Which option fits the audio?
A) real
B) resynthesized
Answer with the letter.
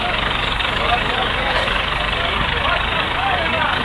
B